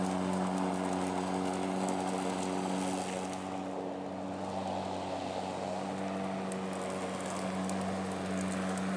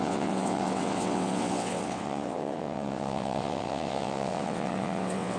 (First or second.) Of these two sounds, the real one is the first